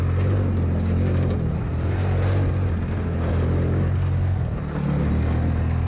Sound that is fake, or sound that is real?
real